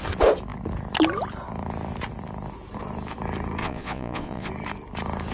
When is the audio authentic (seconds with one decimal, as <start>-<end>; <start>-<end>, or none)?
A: 0.0-3.6; 4.5-5.3